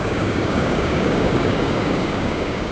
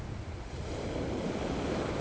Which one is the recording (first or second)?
second